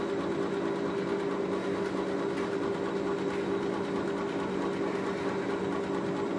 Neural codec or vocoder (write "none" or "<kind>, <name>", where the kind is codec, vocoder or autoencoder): none